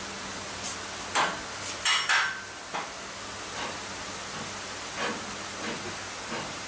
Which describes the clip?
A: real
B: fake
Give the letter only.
A